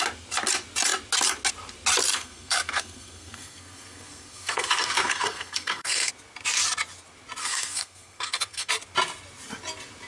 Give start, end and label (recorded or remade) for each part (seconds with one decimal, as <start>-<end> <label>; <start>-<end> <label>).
0.0-2.1 recorded; 2.1-6.1 remade; 6.1-7.4 recorded; 7.4-8.7 remade; 8.7-10.1 recorded